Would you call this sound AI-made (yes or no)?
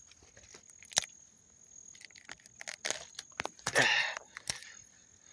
no